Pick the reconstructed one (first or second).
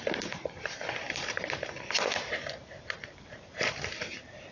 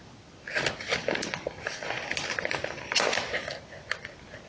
first